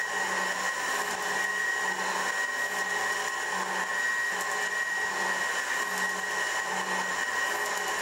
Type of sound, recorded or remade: recorded